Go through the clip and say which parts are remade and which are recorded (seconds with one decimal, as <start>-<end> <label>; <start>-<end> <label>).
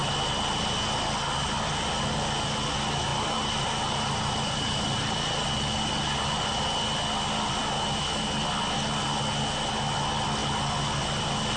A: 0.0-0.7 remade; 0.7-3.1 recorded; 3.1-6.6 remade; 6.6-11.6 recorded